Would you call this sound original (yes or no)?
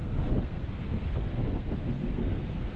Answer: no